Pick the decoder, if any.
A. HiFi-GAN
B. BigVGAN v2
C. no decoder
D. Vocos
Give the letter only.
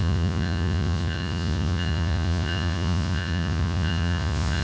D